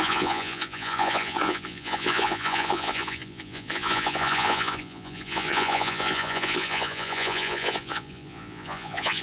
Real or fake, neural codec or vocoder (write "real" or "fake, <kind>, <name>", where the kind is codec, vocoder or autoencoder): fake, vocoder, Vocos